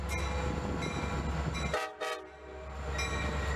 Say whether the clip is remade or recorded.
recorded